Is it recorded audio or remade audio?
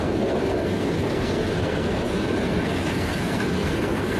remade